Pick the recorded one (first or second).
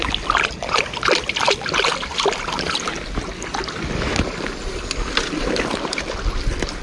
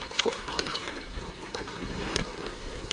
first